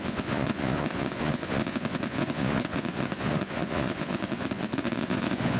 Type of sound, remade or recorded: remade